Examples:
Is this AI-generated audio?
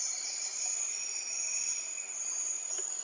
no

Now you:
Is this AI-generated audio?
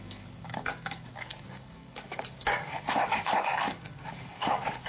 yes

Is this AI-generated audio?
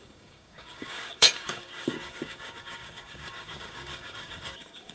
yes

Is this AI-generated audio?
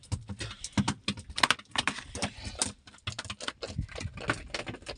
no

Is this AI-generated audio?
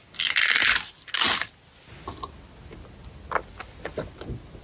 no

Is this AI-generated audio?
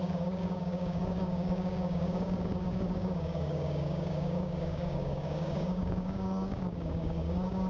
yes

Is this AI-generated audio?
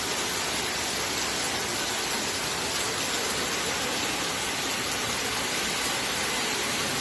no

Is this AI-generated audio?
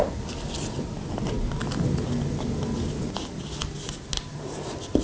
no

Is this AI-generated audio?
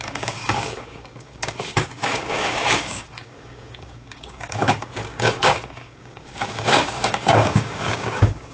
yes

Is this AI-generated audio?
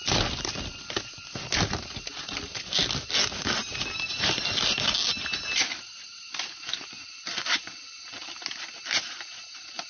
no